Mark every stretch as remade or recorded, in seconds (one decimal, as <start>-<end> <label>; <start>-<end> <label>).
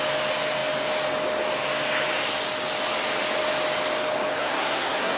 0.0-4.4 recorded; 4.4-5.2 remade